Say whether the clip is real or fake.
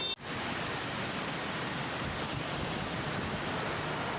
real